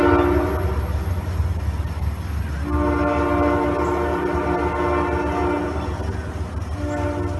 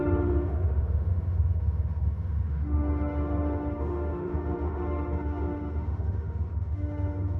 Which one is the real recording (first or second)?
first